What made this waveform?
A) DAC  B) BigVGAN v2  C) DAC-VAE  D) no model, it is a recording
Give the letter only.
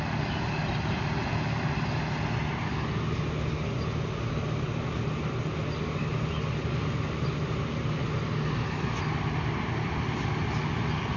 D